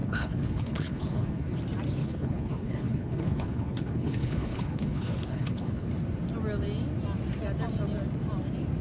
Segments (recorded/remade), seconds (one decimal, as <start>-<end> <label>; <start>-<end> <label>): 0.0-1.6 remade; 1.6-2.0 recorded; 2.0-5.9 remade; 5.9-8.8 recorded